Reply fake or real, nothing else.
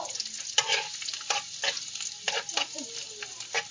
real